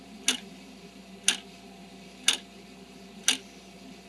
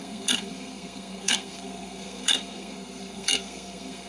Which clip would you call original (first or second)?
first